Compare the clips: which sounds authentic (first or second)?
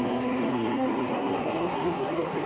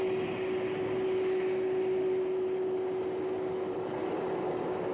second